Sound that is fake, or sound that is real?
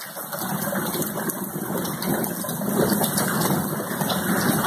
real